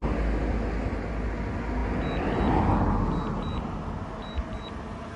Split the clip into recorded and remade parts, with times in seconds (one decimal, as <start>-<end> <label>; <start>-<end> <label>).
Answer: 0.0-5.2 recorded